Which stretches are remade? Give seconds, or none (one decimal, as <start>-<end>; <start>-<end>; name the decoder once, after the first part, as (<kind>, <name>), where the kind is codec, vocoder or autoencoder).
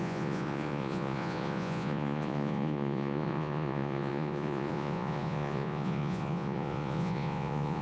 0.0-7.8 (vocoder, Vocos)